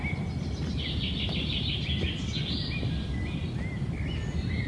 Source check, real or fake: real